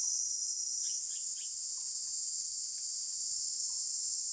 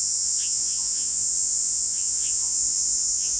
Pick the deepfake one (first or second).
second